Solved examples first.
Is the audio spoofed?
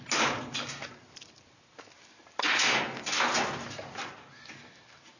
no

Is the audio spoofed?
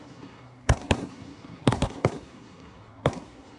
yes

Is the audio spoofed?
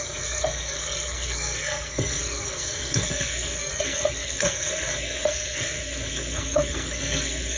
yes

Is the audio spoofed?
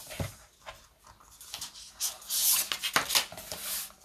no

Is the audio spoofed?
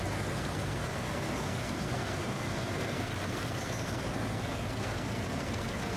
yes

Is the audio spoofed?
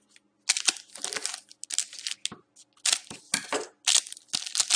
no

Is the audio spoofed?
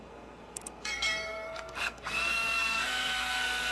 yes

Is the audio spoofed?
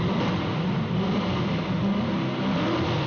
no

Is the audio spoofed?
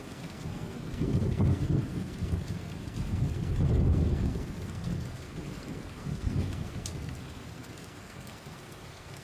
yes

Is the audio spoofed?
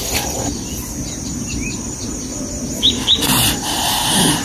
no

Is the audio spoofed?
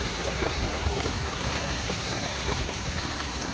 yes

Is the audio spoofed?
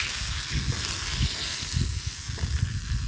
no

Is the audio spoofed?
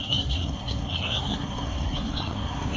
yes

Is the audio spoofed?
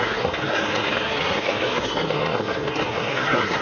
yes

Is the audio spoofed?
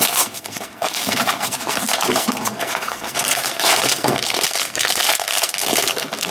yes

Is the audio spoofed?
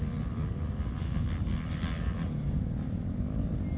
no